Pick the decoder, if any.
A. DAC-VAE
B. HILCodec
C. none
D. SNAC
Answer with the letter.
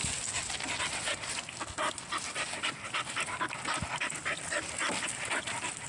C